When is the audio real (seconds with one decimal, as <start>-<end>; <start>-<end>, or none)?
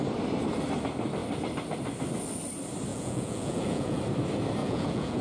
0.0-2.9; 4.0-4.6